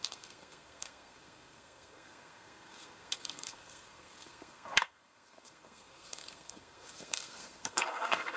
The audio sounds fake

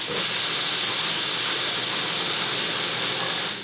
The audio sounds real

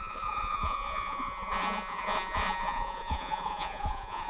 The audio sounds fake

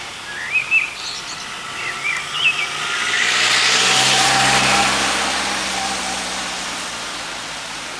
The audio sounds real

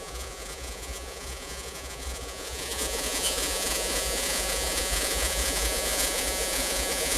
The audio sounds fake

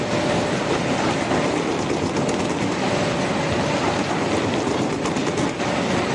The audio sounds real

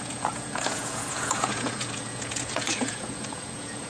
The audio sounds fake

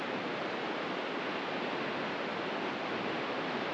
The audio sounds real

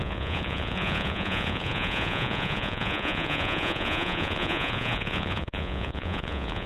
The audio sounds fake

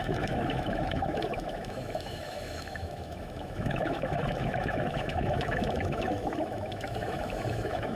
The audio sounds fake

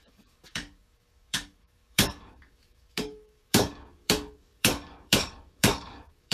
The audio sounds fake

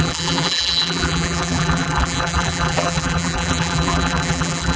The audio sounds fake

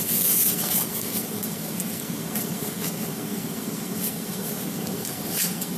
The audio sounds fake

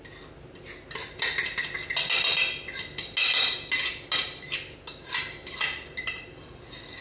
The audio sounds real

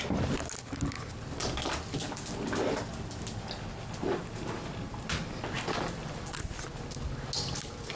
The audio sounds real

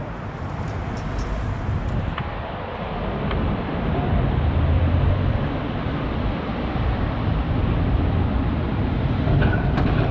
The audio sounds fake